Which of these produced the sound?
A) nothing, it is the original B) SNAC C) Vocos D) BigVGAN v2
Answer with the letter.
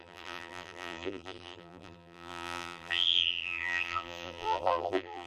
D